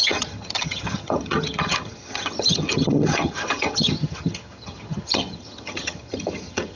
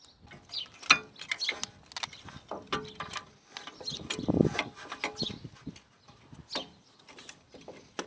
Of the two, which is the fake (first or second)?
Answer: first